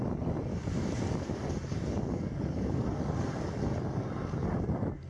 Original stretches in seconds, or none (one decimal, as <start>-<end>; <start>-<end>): 0.0-0.5; 3.6-5.1